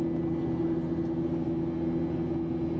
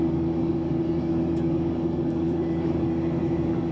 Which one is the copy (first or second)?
second